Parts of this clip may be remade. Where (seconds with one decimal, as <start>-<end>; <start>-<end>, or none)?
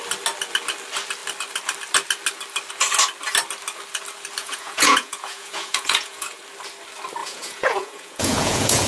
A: 4.4-6.4; 7.2-8.9